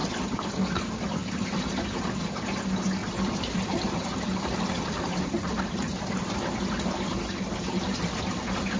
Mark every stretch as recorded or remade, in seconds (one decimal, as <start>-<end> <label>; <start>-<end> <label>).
0.0-0.5 remade; 0.5-3.0 recorded; 3.0-6.4 remade; 6.4-8.8 recorded